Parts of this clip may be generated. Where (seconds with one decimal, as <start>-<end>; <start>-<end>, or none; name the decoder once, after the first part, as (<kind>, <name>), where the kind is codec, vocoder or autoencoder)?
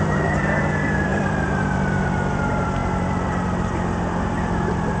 0.0-5.0 (vocoder, BigVGAN v2)